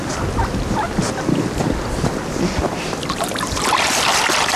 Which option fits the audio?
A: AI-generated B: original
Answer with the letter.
B